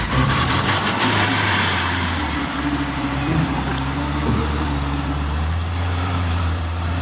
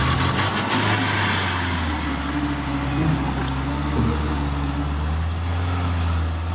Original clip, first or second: second